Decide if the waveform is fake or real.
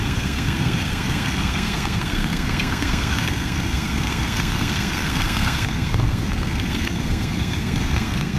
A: fake